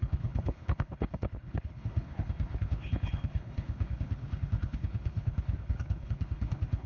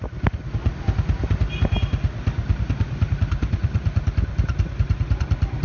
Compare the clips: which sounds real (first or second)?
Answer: second